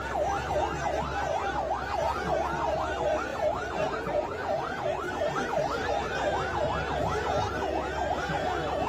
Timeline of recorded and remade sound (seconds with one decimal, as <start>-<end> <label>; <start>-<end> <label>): 0.0-3.3 recorded; 3.3-5.9 remade; 5.9-8.9 recorded